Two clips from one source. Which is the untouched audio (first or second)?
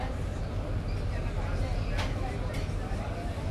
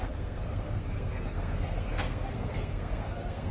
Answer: first